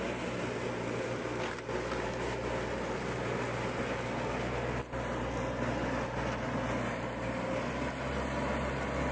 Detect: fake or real real